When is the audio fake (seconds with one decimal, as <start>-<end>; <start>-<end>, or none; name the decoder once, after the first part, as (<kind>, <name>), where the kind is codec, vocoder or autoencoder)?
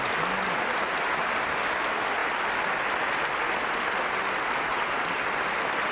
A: none